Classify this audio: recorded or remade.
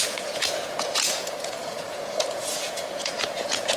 remade